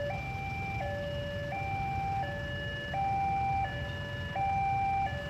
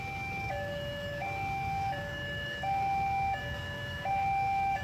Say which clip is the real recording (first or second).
first